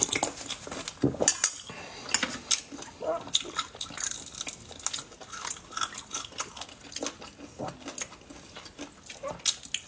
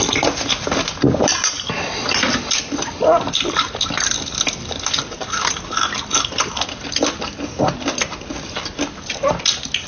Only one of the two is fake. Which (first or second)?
second